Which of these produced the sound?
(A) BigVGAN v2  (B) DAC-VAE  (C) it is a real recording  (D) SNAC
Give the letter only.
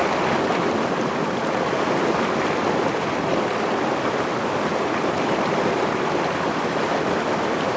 C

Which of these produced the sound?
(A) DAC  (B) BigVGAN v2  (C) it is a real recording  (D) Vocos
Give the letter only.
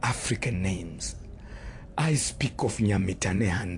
B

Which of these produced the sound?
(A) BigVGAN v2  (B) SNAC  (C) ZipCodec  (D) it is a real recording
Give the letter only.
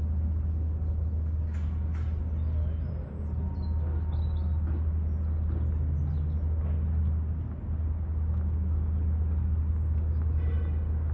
D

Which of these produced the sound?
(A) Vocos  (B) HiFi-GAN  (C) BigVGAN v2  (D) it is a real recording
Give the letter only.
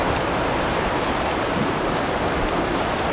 D